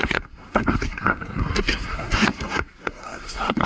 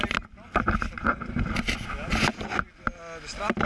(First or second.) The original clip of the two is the second